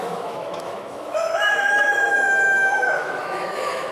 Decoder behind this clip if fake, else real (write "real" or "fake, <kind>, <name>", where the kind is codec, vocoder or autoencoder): fake, autoencoder, DAC-VAE